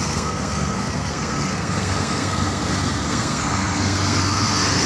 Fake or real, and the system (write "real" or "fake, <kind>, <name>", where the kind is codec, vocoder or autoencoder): fake, codec, SNAC